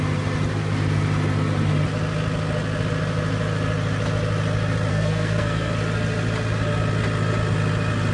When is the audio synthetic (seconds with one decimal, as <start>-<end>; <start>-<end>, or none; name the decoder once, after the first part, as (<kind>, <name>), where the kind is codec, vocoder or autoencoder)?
4.9-5.7 (codec, SNAC)